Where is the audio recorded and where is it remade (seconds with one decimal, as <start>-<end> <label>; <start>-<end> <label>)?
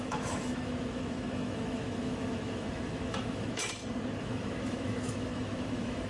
0.0-3.6 remade; 3.6-4.2 recorded; 4.2-6.1 remade